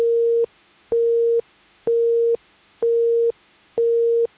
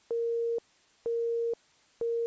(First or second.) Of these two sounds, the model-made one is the first